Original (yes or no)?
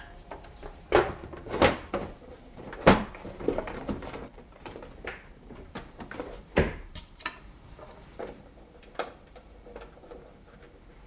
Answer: no